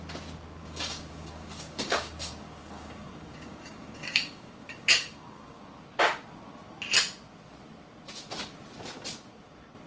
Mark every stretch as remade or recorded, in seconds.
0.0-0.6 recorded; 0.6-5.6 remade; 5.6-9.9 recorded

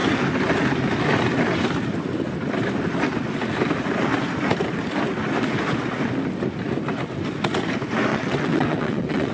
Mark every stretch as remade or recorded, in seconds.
0.0-8.1 recorded; 8.1-9.3 remade